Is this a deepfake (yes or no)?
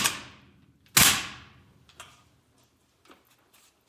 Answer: no